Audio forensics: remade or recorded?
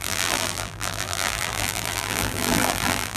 remade